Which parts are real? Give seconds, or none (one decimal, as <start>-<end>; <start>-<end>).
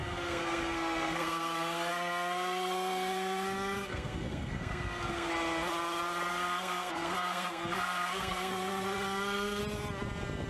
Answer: 5.3-6.3; 9.6-10.5